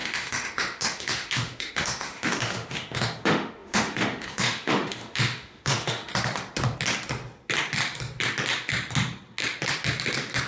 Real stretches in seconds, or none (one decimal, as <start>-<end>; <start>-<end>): 6.1-10.5